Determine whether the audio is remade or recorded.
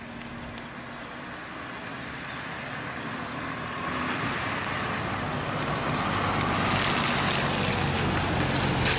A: recorded